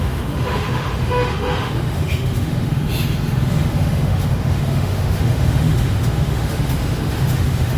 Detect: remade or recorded remade